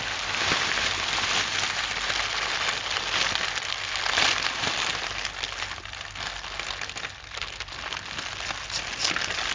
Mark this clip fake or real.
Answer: real